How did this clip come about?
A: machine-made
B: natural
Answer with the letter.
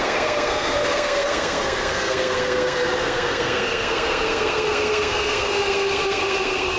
A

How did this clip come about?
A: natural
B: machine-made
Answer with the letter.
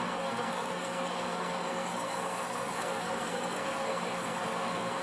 B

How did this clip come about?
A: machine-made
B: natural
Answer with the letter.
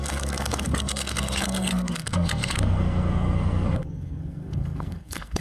A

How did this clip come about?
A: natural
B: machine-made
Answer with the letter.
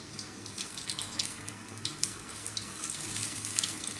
B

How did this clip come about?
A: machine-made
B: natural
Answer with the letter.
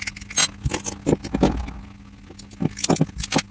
B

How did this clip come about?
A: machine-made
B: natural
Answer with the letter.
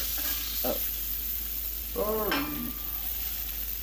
B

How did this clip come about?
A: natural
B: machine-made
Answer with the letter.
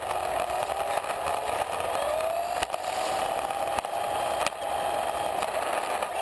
A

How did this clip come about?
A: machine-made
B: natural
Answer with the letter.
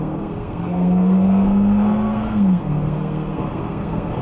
A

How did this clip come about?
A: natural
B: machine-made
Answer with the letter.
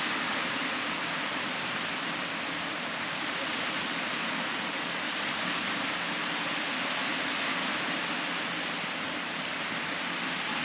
A